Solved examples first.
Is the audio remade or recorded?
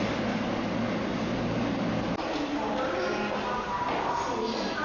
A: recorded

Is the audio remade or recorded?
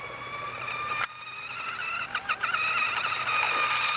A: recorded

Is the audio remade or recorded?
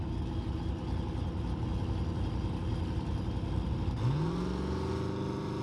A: recorded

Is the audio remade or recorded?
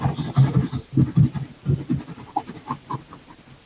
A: remade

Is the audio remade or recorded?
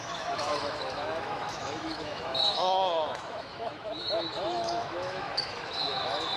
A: remade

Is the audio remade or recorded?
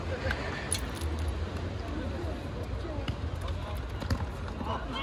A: recorded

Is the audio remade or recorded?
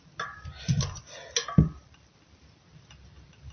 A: recorded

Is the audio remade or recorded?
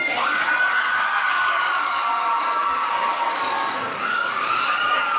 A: remade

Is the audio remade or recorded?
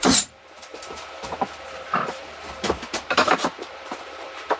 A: remade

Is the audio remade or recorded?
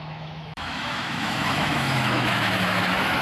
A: remade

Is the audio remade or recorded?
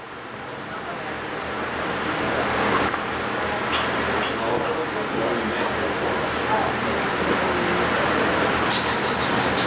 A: recorded